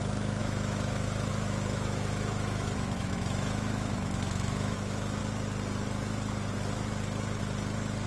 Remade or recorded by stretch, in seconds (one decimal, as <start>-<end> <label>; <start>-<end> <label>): 0.0-5.2 remade; 5.2-8.1 recorded